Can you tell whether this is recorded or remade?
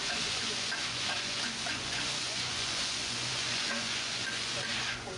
remade